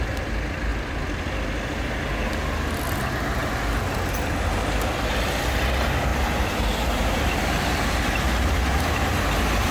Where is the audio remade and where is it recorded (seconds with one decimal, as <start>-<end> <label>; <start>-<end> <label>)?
0.0-6.1 recorded; 6.1-8.6 remade; 8.6-9.7 recorded